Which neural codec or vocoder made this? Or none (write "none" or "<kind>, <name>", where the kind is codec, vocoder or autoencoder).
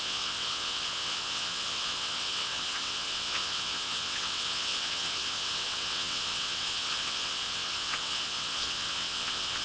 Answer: vocoder, WaveNeXt